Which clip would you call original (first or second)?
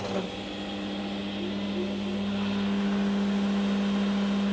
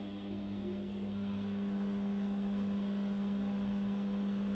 first